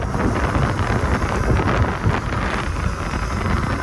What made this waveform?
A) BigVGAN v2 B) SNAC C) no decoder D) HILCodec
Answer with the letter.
C